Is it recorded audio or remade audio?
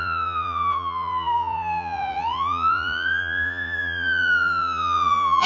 remade